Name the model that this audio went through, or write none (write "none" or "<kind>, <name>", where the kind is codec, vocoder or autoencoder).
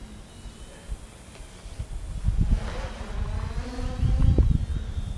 none